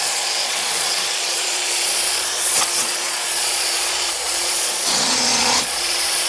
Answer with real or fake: fake